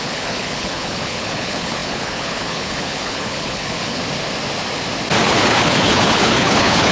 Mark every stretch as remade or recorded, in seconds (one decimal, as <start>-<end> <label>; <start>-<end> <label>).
0.0-4.0 remade; 4.0-5.2 recorded; 5.2-6.9 remade